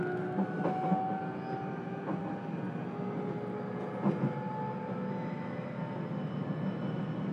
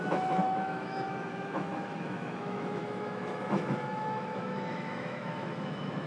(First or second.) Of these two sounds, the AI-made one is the second